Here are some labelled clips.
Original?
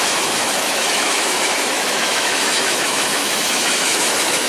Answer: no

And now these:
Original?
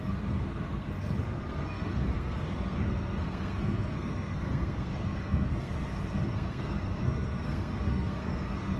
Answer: no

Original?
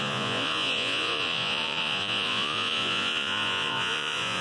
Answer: no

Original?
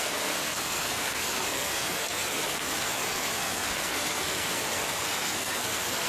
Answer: no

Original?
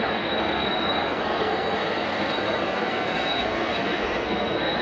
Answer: no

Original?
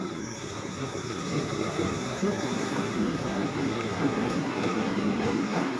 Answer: no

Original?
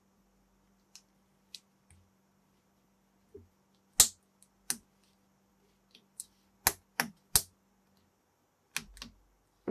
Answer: yes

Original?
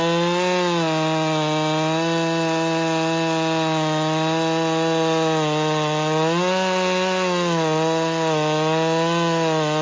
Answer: yes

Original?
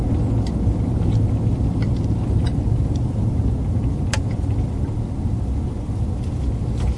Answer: yes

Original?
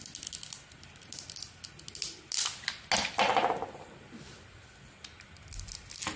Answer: yes